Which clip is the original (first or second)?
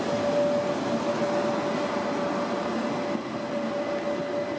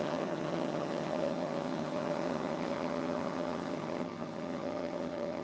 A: first